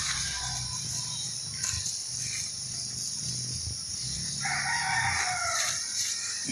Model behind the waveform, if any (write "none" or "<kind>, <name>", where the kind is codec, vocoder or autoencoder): none